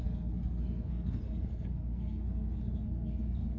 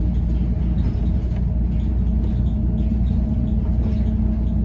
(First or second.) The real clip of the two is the second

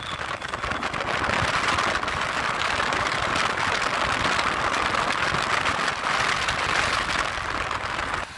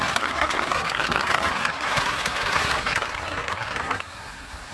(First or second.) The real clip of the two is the first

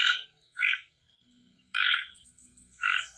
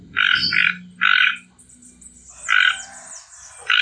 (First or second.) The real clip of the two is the second